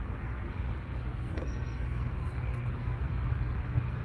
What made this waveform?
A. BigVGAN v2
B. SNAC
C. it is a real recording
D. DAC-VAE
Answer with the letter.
B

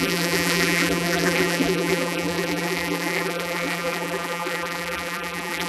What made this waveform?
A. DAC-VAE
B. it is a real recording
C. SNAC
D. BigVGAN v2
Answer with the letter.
D